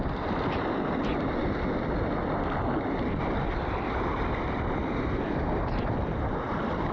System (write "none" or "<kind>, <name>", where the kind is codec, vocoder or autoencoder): none